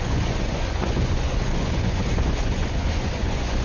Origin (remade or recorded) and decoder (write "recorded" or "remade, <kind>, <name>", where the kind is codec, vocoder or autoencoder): remade, vocoder, Vocos